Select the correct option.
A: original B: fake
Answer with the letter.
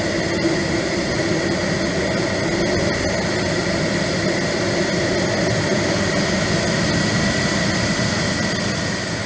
A